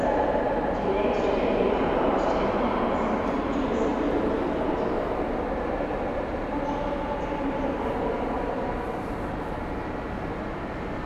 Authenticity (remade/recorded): remade